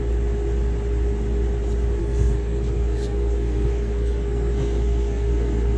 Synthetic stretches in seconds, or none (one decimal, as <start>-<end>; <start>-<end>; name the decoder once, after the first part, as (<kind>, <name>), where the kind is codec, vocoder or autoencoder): 2.0-5.8 (codec, SNAC)